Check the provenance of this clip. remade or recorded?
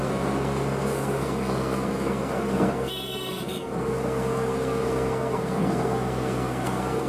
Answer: remade